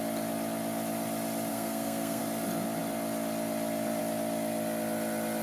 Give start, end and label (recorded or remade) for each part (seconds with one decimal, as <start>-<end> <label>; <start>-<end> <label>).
0.0-1.5 recorded; 1.5-2.2 remade; 2.2-5.4 recorded